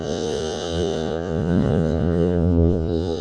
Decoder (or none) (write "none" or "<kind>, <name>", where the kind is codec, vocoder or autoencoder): vocoder, Vocos